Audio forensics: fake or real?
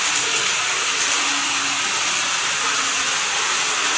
real